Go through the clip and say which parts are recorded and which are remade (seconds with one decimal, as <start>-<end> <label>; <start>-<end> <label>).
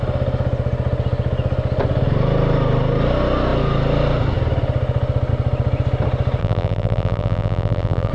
0.0-6.4 recorded; 6.4-8.1 remade